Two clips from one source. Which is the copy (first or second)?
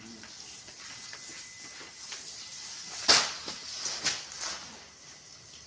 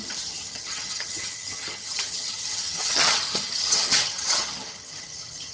second